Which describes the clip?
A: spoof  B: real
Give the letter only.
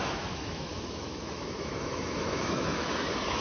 A